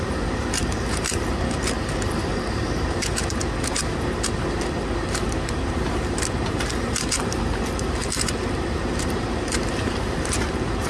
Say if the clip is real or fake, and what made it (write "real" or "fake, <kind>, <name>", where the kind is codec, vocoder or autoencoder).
fake, vocoder, BigVGAN v2